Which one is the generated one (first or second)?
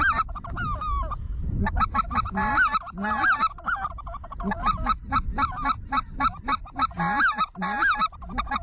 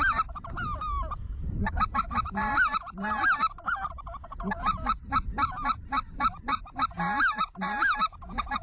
second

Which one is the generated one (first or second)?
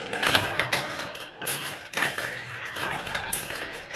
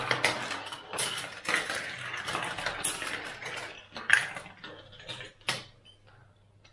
first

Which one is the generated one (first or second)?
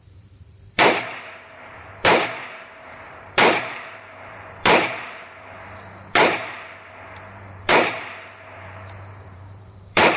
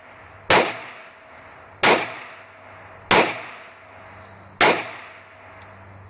first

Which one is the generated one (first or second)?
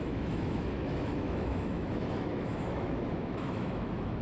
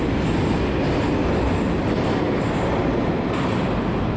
first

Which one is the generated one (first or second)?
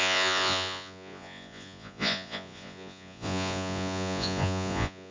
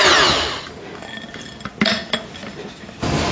first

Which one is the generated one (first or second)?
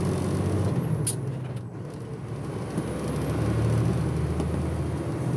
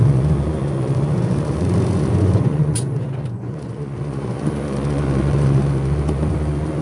second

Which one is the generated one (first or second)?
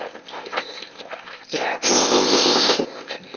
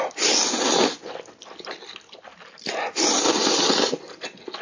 first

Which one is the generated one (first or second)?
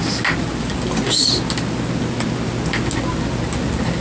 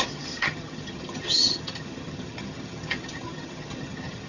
second